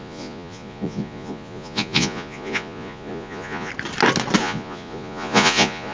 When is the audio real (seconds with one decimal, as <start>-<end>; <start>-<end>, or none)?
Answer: 3.7-4.4